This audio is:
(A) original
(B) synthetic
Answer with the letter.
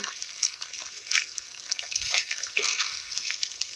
B